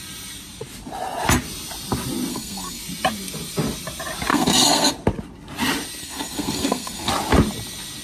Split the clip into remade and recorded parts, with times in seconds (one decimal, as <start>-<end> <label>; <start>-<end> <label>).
0.0-2.3 recorded; 2.3-2.8 remade; 2.8-4.3 recorded; 4.3-4.9 remade; 4.9-6.0 recorded; 6.0-7.1 remade; 7.1-8.0 recorded

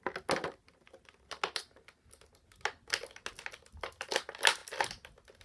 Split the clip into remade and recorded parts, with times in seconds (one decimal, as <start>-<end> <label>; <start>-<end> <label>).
0.0-5.4 recorded